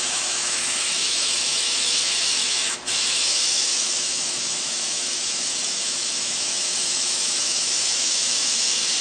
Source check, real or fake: fake